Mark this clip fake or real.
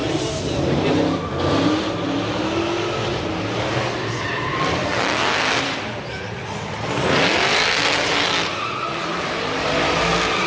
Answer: real